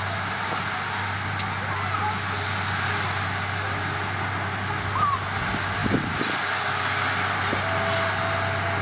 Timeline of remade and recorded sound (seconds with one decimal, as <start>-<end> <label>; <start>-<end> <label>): 0.0-8.8 recorded